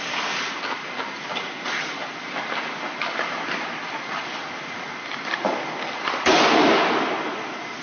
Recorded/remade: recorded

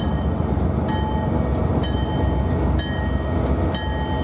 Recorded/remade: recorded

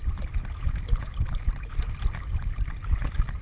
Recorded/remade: recorded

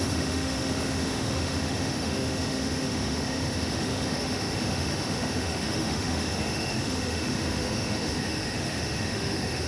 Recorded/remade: remade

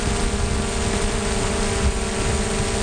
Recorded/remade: recorded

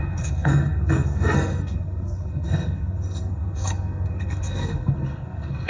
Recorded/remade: remade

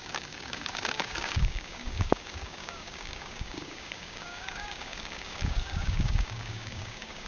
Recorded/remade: remade